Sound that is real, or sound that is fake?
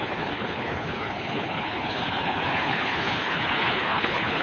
fake